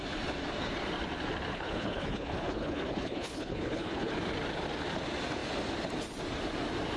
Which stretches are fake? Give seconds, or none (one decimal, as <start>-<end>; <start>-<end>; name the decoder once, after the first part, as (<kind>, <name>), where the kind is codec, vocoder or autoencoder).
1.5-4.1 (codec, HILCodec)